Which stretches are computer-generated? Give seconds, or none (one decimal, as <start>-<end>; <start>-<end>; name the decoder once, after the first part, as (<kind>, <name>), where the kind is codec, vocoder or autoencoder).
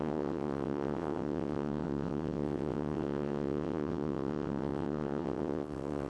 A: 0.0-6.1 (vocoder, WaveNeXt)